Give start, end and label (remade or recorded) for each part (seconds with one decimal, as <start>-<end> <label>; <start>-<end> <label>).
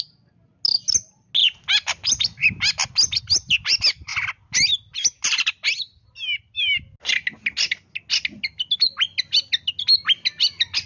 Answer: 0.0-10.9 recorded